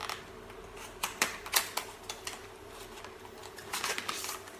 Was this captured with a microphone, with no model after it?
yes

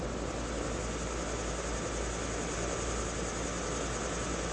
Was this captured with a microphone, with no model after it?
yes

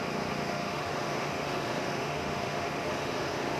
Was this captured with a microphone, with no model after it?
no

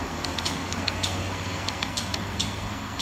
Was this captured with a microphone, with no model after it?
no